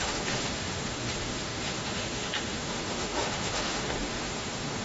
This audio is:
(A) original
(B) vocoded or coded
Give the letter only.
B